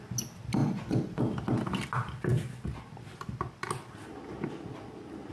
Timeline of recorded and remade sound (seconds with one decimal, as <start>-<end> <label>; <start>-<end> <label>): 0.0-0.6 recorded; 0.6-1.2 remade; 1.2-5.3 recorded